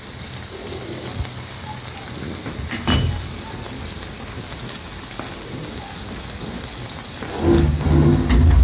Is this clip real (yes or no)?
yes